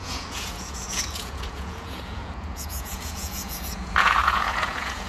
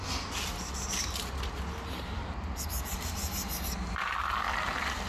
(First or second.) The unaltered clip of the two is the second